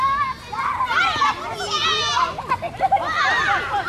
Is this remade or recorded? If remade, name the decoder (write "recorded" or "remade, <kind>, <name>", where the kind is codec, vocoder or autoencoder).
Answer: recorded